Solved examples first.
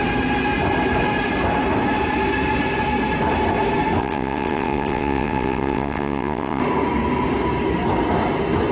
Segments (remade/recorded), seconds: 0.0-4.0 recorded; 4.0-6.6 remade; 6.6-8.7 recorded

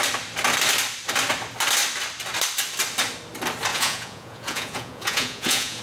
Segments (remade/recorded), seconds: 0.0-3.7 recorded; 3.7-5.8 remade

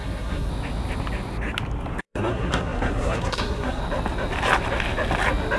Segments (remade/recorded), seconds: 0.0-0.5 remade; 0.5-2.0 recorded; 2.0-3.8 remade; 3.8-5.6 recorded

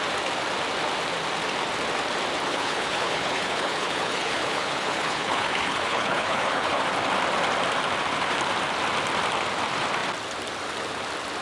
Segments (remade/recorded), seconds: 0.0-2.5 recorded; 2.5-6.8 remade; 6.8-11.4 recorded

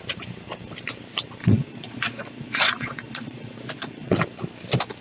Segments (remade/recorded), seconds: 0.0-1.4 recorded; 1.4-4.2 remade; 4.2-5.0 recorded

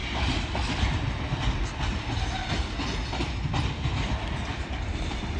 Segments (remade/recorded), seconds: 0.0-4.5 recorded; 4.5-5.4 remade